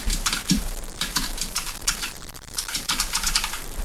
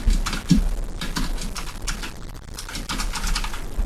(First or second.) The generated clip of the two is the first